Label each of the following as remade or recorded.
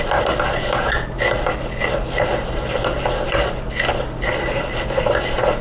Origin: recorded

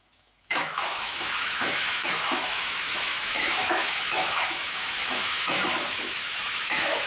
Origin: remade